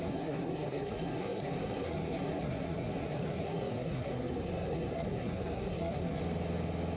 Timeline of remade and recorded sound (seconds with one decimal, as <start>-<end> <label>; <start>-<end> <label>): 0.0-6.2 remade; 6.2-7.0 recorded